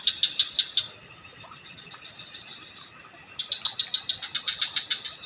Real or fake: real